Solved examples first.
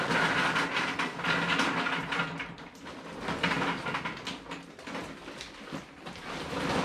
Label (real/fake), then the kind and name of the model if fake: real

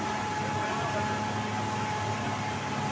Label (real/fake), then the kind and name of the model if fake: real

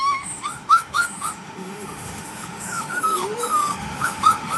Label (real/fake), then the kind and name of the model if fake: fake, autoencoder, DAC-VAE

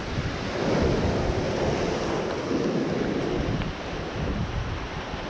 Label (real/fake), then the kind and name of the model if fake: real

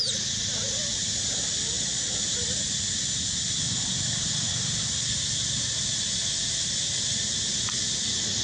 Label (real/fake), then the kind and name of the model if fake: real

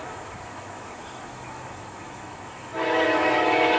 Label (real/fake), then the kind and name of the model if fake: fake, autoencoder, DAC-VAE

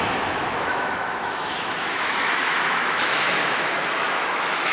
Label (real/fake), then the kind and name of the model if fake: fake, autoencoder, DAC-VAE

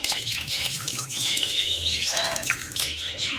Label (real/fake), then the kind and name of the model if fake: fake, autoencoder, DAC-VAE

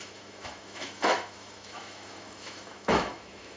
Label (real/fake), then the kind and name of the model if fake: fake, autoencoder, DAC-VAE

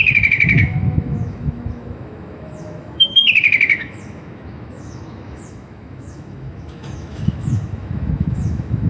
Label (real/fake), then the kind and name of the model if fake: fake, autoencoder, DAC-VAE